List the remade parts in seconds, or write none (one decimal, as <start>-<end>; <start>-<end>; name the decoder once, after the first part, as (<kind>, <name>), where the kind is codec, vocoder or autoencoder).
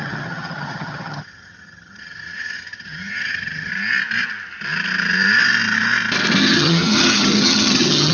0.0-3.7 (vocoder, HiFi-GAN); 6.4-8.1